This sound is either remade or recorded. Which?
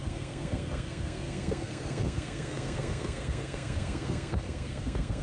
remade